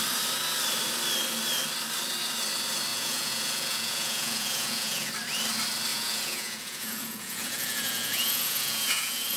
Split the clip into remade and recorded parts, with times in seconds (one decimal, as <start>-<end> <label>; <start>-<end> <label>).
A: 0.0-2.9 recorded; 2.9-5.1 remade; 5.1-5.9 recorded; 5.9-9.4 remade